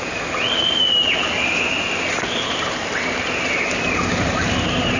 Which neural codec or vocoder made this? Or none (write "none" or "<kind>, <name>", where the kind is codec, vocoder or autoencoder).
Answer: none